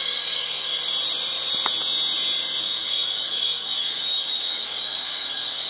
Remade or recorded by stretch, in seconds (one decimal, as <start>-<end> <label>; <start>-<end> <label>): 0.0-0.8 remade; 0.8-2.6 recorded; 2.6-5.7 remade